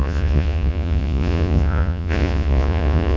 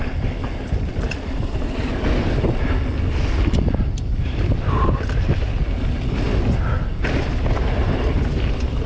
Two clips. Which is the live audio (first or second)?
second